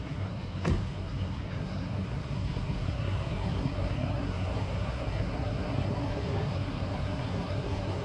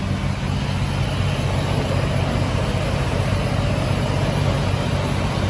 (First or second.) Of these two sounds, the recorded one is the second